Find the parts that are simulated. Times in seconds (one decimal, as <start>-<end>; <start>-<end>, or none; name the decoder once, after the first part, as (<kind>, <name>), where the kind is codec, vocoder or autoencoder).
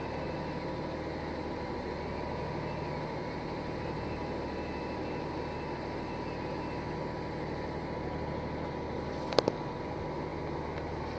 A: none